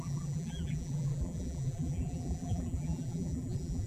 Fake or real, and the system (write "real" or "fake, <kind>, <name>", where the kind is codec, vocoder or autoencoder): fake, vocoder, BigVGAN v2